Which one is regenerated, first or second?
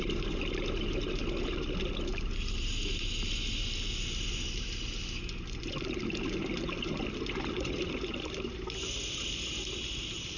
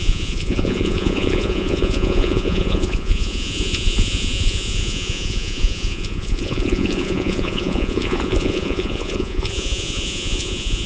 second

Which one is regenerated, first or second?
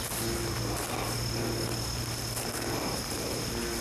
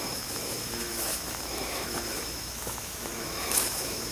second